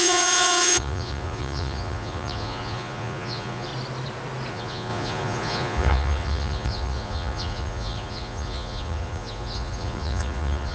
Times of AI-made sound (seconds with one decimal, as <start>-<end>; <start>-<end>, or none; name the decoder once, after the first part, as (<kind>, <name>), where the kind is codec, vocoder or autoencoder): 0.0-3.7 (vocoder, Vocos); 4.5-10.7